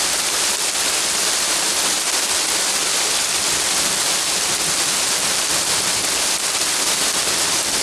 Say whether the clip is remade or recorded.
recorded